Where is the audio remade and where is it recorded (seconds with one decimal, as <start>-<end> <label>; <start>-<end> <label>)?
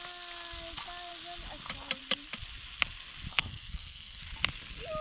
0.0-3.3 recorded; 3.3-4.2 remade; 4.2-5.0 recorded